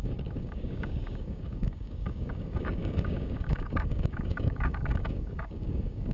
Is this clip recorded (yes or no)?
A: no